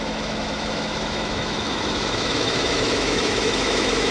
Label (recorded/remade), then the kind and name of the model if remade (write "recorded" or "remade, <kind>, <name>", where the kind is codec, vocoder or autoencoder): remade, autoencoder, DAC-VAE